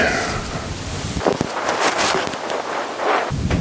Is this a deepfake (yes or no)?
yes